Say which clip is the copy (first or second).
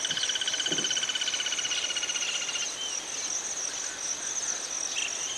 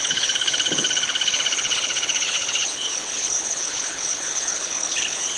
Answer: second